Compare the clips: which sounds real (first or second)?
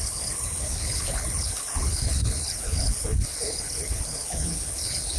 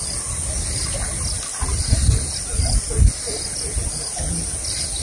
second